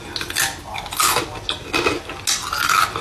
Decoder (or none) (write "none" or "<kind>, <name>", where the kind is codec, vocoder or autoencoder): none